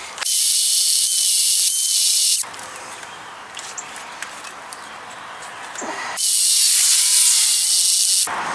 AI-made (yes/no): no